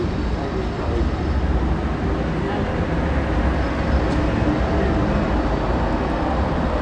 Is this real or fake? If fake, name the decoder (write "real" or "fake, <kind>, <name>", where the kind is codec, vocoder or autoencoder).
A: real